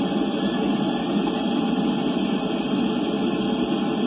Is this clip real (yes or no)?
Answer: yes